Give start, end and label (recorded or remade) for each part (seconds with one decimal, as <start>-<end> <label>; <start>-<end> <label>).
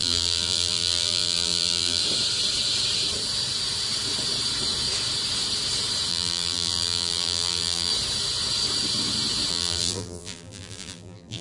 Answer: 0.0-2.0 remade; 2.0-6.1 recorded; 6.1-7.9 remade; 7.9-9.5 recorded; 9.5-11.4 remade